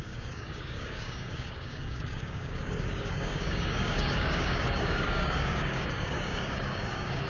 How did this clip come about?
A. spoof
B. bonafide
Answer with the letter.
A